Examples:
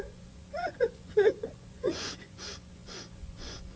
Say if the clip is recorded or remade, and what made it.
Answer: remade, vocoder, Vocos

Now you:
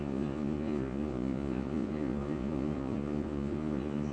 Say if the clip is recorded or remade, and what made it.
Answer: remade, vocoder, Vocos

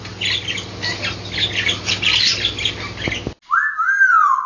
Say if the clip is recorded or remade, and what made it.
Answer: recorded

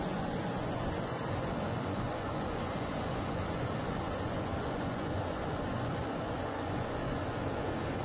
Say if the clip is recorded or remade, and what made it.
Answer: remade, vocoder, Vocos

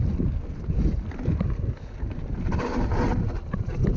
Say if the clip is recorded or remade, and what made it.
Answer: recorded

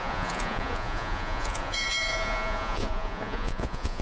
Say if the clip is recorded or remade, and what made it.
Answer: remade, vocoder, Vocos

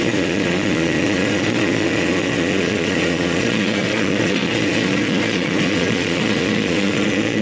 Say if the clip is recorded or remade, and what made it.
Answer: remade, vocoder, Vocos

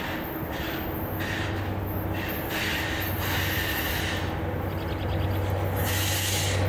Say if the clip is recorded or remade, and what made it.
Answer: recorded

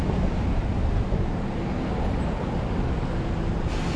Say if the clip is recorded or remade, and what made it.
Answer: recorded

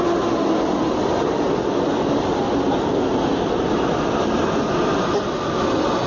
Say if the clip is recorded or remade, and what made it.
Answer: recorded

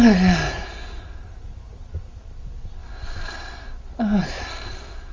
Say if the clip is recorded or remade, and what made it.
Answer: recorded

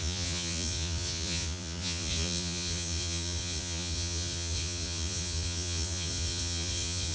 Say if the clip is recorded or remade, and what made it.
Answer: remade, vocoder, Vocos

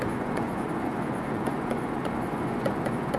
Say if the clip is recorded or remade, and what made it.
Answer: remade, vocoder, Vocos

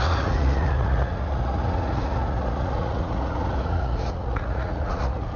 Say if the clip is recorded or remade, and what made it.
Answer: remade, vocoder, Vocos